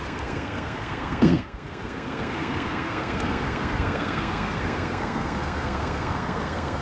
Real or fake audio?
fake